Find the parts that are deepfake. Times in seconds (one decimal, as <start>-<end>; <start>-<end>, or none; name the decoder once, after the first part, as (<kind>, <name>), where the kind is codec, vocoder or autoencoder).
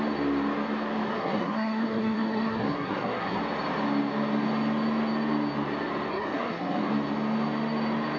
1.1-3.4 (codec, SNAC); 6.1-6.9